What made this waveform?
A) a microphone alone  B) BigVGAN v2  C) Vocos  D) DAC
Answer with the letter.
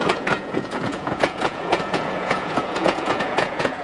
C